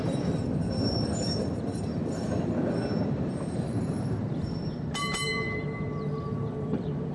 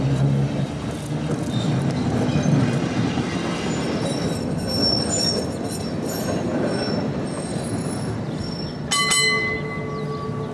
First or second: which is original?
second